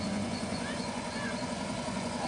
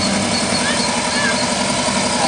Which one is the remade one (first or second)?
first